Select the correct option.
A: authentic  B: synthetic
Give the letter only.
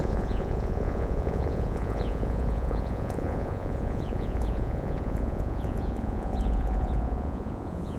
B